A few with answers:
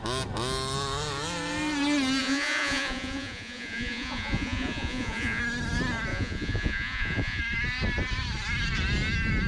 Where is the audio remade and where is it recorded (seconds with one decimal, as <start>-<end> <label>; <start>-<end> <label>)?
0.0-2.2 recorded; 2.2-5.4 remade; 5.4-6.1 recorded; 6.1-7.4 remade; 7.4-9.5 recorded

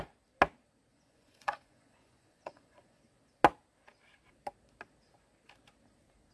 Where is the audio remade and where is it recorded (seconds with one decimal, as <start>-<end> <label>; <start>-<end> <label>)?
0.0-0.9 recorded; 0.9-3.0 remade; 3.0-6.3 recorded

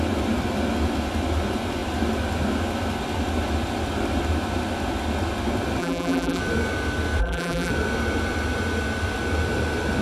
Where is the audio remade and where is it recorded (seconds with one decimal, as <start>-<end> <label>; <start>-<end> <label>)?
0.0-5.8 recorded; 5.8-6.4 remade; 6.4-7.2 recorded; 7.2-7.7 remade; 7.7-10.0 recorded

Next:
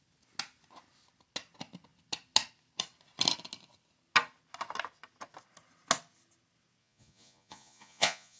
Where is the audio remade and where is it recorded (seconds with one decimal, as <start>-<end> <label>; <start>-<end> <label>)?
0.0-6.8 recorded; 6.8-8.4 remade